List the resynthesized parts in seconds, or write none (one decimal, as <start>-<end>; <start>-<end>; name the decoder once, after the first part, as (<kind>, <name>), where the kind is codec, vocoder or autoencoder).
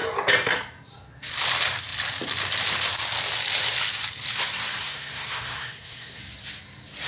4.8-6.2 (codec, SNAC)